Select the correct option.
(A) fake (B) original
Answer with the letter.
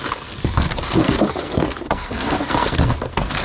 A